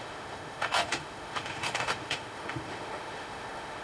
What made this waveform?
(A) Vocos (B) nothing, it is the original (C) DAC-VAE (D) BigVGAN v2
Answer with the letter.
C